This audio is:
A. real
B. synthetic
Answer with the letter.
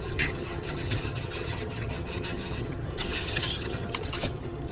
B